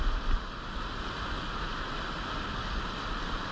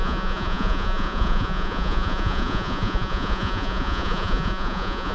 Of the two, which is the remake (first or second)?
second